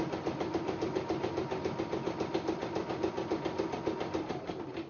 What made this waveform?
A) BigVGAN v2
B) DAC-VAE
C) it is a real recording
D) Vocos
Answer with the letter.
C